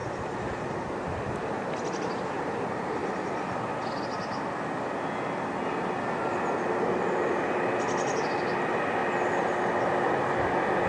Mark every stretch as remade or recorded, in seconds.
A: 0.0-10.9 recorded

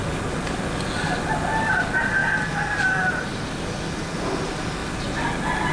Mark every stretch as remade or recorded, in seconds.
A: 0.0-5.7 recorded